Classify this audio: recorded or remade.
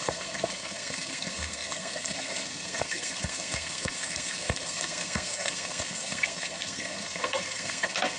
remade